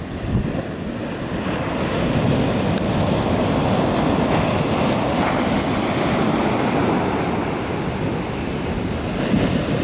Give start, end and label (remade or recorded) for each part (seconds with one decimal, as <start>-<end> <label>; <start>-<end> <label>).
0.0-6.8 recorded; 6.8-7.4 remade; 7.4-9.8 recorded